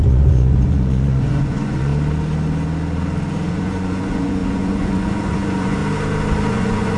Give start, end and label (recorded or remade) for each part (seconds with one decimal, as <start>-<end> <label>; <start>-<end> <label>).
0.0-1.9 remade; 1.9-3.5 recorded; 3.5-5.8 remade; 5.8-6.5 recorded; 6.5-7.0 remade